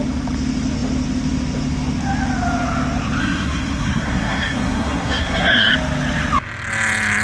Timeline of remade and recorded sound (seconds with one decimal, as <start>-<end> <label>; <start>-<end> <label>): 0.0-3.2 recorded; 3.2-5.7 remade; 5.7-7.2 recorded